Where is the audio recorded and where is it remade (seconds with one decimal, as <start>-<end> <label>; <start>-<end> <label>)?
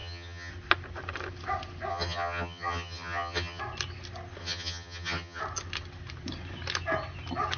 0.0-0.5 remade; 0.5-1.9 recorded; 1.9-3.6 remade; 3.6-4.4 recorded; 4.4-5.4 remade; 5.4-7.6 recorded